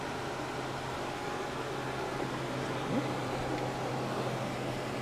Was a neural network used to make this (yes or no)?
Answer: no